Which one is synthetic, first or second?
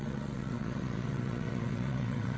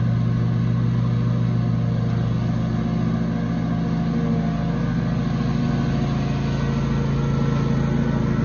first